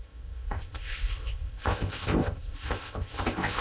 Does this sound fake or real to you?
fake